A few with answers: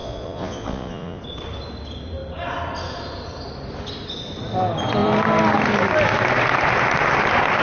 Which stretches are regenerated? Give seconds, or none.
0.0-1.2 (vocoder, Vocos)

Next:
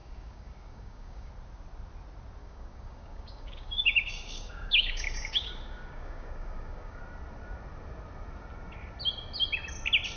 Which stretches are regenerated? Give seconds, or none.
0.0-1.3 (codec, DAC); 2.4-7.0

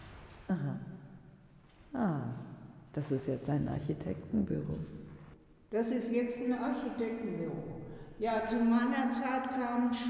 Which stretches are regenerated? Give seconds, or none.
none

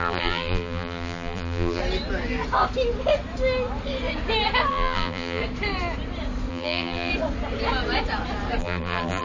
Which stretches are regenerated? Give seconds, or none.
0.0-1.8 (vocoder, BigVGAN v2); 4.7-5.4; 6.5-7.1; 8.6-9.2

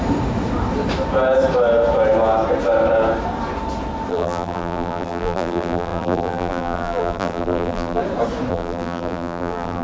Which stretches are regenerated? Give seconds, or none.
4.1-8.0 (vocoder, BigVGAN v2); 8.5-9.8

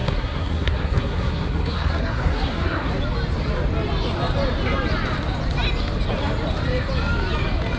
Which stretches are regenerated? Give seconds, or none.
0.0-2.9 (codec, SNAC)

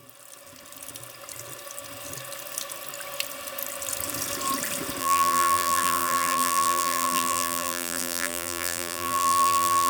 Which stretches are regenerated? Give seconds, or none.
5.0-9.9 (vocoder, BigVGAN v2)

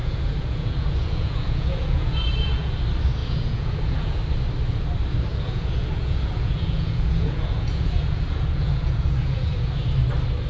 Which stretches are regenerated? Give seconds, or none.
0.0-2.8 (vocoder, Vocos); 3.2-4.2; 5.3-9.7